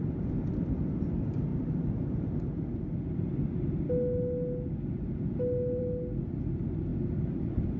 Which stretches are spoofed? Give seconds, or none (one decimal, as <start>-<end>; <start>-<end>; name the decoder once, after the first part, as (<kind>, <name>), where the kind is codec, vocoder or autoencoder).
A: none

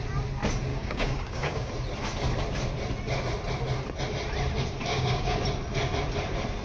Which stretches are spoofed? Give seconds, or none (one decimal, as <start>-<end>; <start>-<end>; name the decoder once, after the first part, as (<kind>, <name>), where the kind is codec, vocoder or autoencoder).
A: 0.7-1.7 (codec, DAC); 4.9-5.4

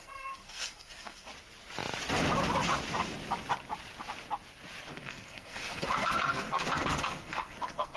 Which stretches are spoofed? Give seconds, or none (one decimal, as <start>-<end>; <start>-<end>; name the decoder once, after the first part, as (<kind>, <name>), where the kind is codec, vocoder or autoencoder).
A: 0.0-1.3 (codec, SNAC); 4.9-8.0

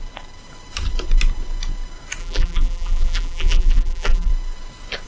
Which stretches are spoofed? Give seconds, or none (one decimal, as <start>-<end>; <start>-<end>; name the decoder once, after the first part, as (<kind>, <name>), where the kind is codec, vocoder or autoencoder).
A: 2.2-4.3 (vocoder, BigVGAN v2)

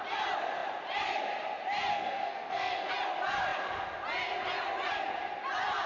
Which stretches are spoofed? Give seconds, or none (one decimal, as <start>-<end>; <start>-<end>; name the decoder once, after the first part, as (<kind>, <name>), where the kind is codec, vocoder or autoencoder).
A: 1.9-2.9 (codec, SNAC)

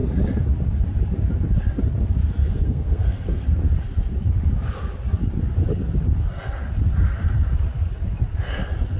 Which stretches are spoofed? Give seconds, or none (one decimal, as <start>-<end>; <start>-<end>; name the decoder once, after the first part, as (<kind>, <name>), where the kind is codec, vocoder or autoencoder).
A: 2.4-3.6 (codec, SNAC)

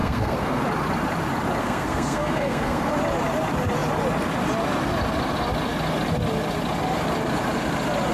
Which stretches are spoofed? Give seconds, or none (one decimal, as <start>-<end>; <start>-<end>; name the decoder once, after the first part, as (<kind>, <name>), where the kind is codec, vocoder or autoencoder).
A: 0.0-0.6 (codec, SNAC); 1.6-2.9